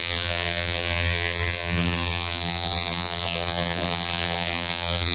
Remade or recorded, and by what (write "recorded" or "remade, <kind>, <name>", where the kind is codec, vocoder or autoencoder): remade, vocoder, BigVGAN v2